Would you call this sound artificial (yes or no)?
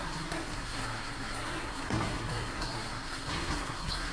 yes